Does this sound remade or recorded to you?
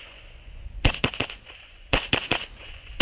remade